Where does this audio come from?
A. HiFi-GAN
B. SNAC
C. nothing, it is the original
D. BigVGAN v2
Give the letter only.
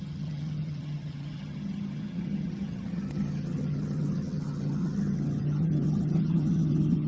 A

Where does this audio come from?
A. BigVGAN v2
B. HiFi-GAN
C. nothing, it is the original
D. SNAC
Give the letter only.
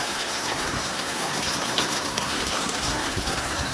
D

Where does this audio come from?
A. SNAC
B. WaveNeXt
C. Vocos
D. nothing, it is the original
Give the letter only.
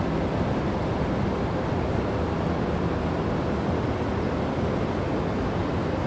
D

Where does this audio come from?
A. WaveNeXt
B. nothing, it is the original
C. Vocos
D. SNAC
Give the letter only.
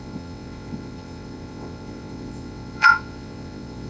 A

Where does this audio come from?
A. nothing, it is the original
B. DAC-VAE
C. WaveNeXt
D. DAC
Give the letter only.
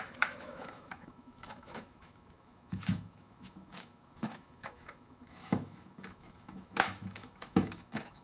B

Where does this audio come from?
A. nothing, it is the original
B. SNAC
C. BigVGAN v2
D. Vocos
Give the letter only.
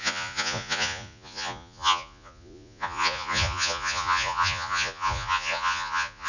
D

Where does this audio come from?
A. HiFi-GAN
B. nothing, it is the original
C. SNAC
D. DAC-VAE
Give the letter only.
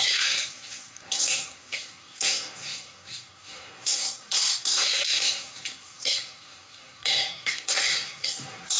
C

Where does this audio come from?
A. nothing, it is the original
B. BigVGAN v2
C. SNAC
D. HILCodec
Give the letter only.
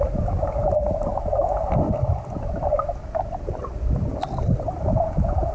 A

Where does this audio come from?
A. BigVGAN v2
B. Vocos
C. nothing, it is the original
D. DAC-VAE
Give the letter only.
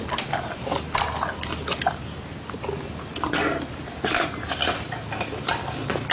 C